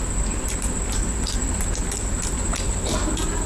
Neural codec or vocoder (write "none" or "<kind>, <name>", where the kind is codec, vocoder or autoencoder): none